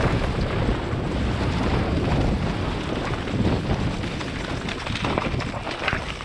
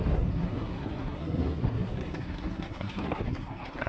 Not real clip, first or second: second